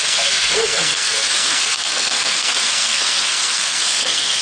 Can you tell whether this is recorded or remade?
remade